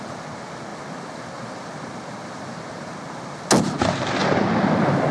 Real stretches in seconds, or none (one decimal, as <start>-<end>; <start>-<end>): 0.0-5.1